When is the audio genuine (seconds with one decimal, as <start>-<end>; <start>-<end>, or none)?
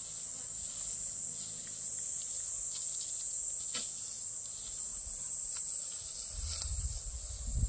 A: 0.0-4.9; 7.0-7.7